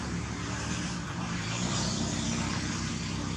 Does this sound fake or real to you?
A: fake